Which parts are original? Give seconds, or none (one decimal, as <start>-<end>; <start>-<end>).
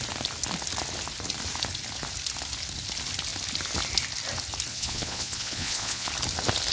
0.0-4.7; 6.1-6.7